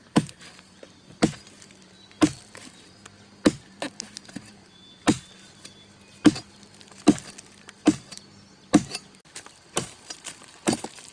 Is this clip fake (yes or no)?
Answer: no